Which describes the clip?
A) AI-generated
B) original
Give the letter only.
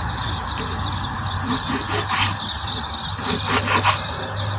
B